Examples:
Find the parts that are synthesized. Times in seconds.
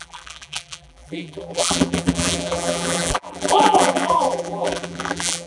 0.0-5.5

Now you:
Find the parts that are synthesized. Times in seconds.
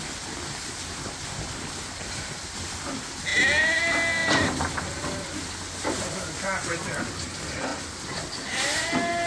none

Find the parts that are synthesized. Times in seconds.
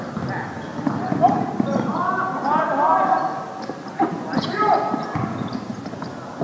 none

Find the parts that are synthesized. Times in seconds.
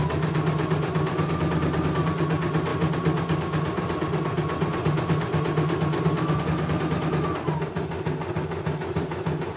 none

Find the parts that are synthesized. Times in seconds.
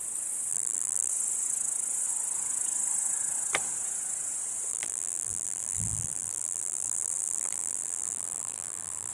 0.5-1.1; 4.7-9.1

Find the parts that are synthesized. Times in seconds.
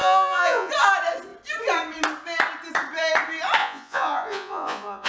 0.0-0.7; 3.6-5.1